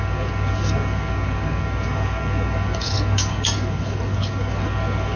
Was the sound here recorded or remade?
remade